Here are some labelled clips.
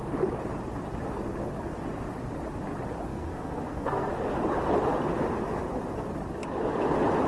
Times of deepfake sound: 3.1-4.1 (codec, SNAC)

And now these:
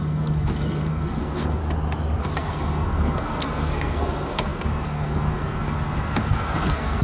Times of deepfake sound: 0.0-1.6 (codec, SNAC); 2.2-7.0

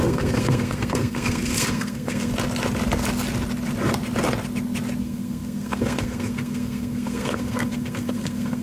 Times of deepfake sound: 0.0-2.3 (codec, SNAC); 5.0-8.6

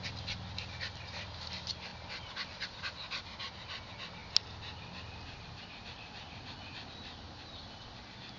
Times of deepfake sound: none

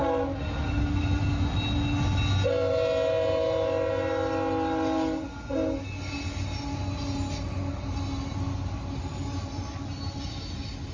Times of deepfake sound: none